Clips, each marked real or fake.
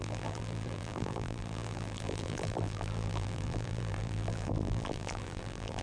fake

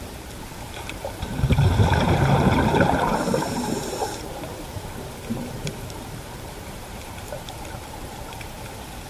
fake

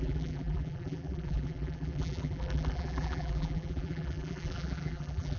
fake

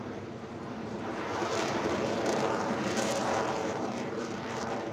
fake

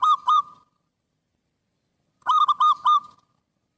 fake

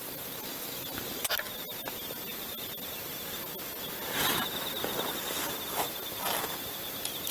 real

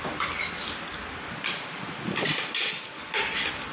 fake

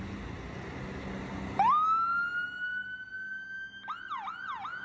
real